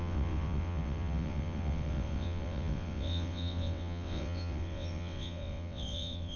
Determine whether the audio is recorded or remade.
remade